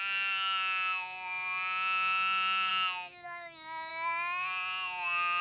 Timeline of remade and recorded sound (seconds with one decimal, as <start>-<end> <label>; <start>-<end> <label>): 0.0-5.4 recorded